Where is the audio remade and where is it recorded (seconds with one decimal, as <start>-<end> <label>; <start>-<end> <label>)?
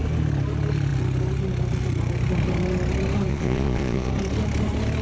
0.0-3.3 recorded; 3.3-4.1 remade; 4.1-5.0 recorded